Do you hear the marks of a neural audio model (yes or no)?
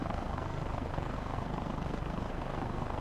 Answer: yes